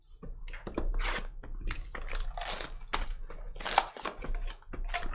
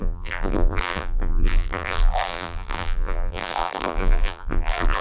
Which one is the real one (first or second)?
first